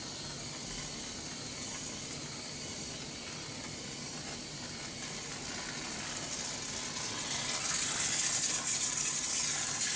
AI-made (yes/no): no